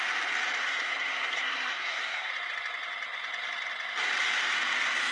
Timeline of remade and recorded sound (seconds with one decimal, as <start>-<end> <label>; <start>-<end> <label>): 0.0-0.6 recorded; 0.6-2.3 remade; 2.3-5.1 recorded